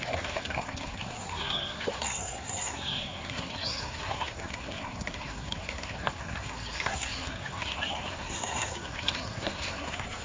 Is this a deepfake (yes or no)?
yes